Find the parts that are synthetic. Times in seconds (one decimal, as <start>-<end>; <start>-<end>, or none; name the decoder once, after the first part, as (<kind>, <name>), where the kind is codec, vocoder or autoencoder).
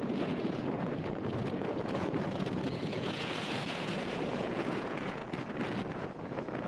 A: 0.0-5.2 (vocoder, Vocos); 5.9-6.7